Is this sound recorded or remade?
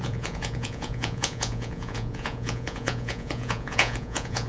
remade